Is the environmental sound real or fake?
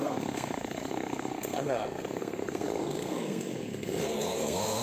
fake